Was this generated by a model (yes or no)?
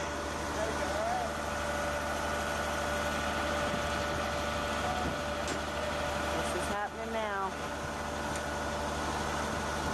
no